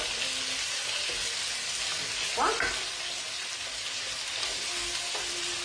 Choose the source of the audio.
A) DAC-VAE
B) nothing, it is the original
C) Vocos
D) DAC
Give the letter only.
B